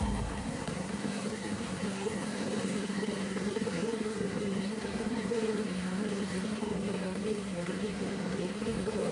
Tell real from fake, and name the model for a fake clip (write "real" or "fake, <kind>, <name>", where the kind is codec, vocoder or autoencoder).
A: fake, codec, SNAC